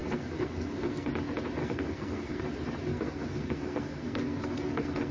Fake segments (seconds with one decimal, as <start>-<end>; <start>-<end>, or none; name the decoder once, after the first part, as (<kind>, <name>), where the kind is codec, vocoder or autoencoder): 0.0-1.1 (codec, SNAC); 1.6-2.4; 2.9-5.1